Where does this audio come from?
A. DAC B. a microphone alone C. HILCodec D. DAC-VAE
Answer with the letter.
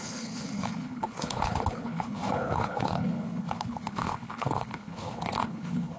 C